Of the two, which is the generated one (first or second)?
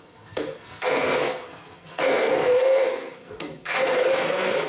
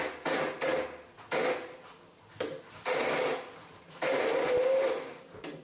first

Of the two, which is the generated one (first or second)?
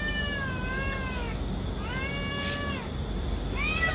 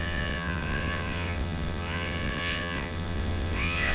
second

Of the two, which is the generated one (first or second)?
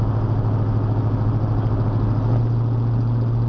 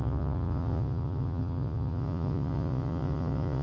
second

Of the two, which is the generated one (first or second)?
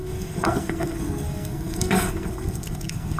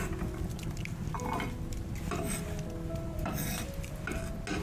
first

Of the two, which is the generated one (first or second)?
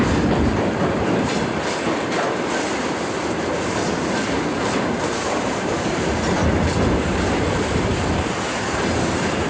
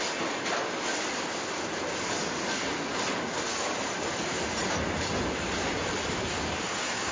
first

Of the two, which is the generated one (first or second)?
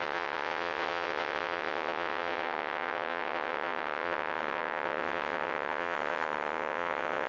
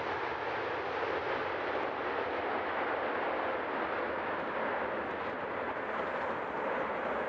first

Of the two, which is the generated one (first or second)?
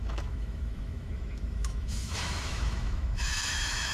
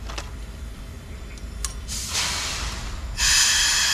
first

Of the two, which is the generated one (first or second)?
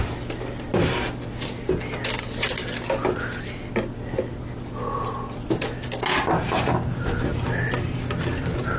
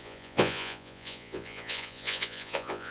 second